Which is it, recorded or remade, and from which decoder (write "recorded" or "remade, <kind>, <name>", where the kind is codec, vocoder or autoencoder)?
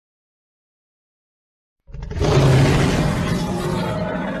recorded